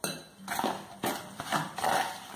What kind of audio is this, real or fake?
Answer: real